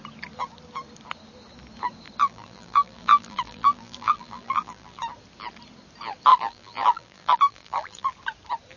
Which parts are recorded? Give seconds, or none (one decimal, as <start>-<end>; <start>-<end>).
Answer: 0.0-2.2; 5.0-6.3; 8.1-8.8